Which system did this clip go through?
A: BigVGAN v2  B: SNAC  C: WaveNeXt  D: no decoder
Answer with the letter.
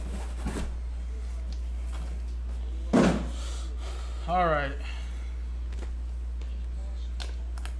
D